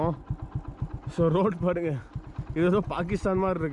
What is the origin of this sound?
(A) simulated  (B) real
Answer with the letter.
B